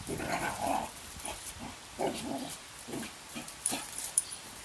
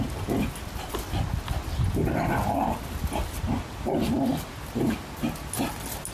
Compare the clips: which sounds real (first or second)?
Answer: second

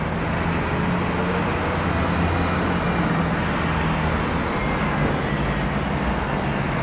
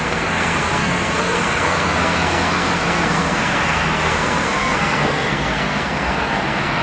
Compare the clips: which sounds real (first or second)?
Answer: first